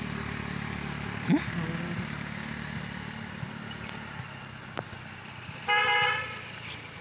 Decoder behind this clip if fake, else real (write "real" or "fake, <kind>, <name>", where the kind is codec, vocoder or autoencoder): fake, vocoder, BigVGAN v2